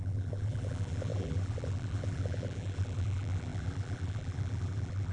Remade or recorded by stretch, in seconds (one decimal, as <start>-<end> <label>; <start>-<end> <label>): 0.0-5.1 remade